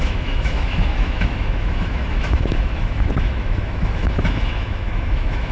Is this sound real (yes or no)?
no